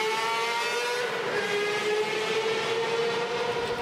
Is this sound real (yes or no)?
yes